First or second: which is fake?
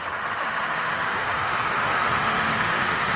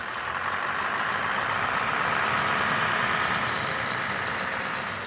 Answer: first